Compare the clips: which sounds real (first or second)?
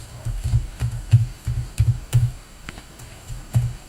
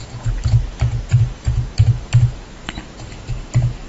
second